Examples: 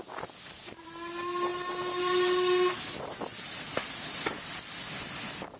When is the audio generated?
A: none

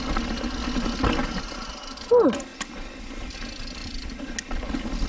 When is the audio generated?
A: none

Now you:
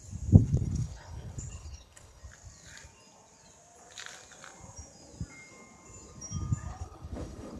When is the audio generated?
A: 0.4-2.2 (codec, HILCodec); 6.7-7.6

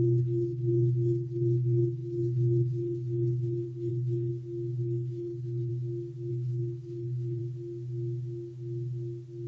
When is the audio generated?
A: 0.0-4.3 (codec, HILCodec); 4.8-5.7; 6.3-7.4

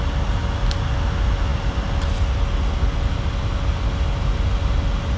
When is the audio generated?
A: none

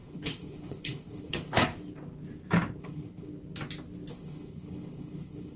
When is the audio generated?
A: 0.0-1.6 (codec, HILCodec); 2.8-3.3; 4.1-5.6